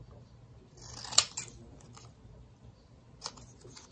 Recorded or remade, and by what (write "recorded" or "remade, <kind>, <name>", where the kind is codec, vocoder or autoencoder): recorded